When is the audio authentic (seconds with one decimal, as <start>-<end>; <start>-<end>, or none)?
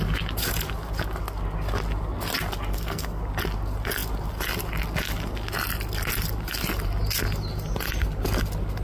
0.0-2.7; 3.2-8.8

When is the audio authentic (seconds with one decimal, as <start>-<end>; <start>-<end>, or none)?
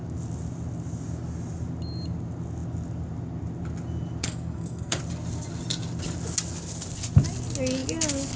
0.0-4.2; 5.0-8.4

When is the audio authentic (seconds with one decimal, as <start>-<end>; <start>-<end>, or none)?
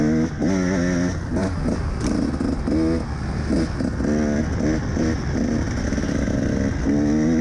0.0-7.4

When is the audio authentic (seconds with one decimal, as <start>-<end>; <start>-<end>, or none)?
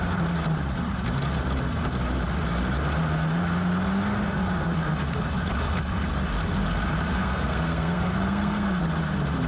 0.0-7.2; 8.8-9.5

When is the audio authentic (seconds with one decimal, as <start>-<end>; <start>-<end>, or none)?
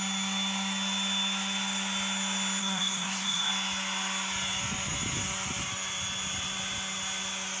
0.0-2.6; 3.5-7.6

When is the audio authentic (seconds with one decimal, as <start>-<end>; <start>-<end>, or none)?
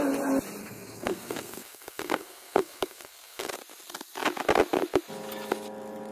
0.0-0.6; 3.5-6.1